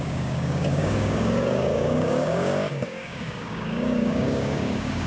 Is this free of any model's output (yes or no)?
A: no